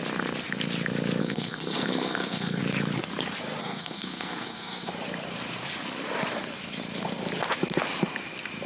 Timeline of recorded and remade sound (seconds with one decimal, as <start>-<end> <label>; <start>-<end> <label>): 0.0-1.2 recorded; 1.2-2.6 remade; 2.6-3.6 recorded; 3.6-4.9 remade; 4.9-8.7 recorded